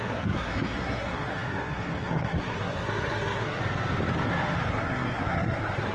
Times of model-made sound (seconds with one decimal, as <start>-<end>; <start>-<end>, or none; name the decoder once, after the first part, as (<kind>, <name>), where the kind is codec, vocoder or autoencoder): 0.0-3.6 (codec, SNAC); 4.7-5.9